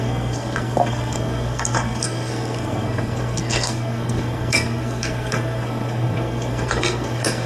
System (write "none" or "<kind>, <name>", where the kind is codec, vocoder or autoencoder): codec, SNAC